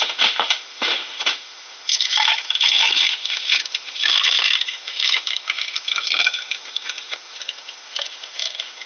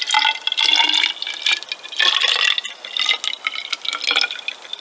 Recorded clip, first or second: second